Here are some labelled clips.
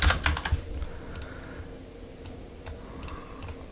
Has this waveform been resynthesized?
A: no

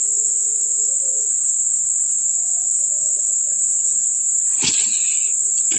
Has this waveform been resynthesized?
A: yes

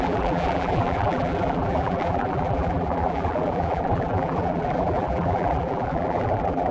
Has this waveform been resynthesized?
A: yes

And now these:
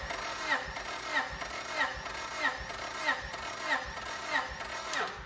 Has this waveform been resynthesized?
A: no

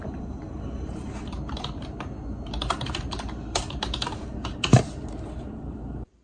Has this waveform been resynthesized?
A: yes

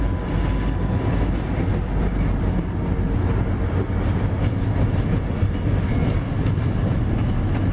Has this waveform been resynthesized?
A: no